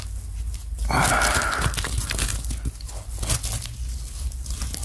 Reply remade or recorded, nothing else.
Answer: recorded